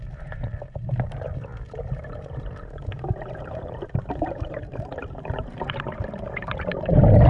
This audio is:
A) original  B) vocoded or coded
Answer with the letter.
B